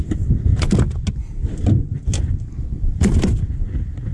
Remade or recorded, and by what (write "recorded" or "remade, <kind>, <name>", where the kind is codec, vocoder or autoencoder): recorded